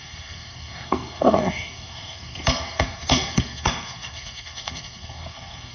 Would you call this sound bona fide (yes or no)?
no